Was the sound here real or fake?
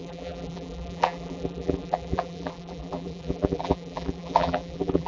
fake